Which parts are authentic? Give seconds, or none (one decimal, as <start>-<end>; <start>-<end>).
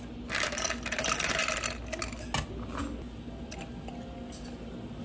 0.0-5.0